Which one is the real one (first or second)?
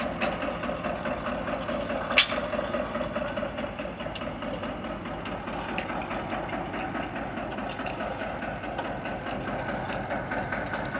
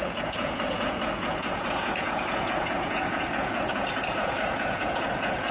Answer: first